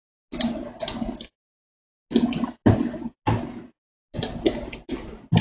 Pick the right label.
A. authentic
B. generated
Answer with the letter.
A